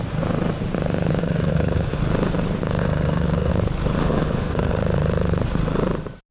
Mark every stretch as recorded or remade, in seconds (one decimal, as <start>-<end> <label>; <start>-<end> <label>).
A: 0.0-1.2 recorded; 1.2-2.0 remade; 2.0-2.8 recorded; 2.8-3.5 remade; 3.5-4.0 recorded; 4.0-4.7 remade; 4.7-6.3 recorded